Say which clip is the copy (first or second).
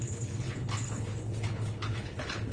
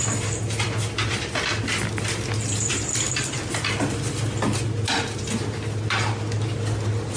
first